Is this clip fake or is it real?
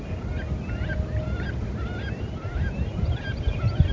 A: real